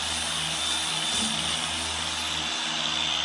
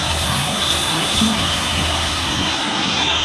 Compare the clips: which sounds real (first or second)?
first